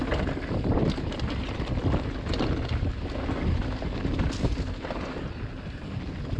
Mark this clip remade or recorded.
recorded